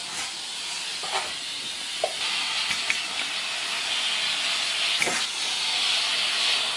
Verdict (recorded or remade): recorded